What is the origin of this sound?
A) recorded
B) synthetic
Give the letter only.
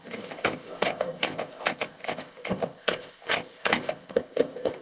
B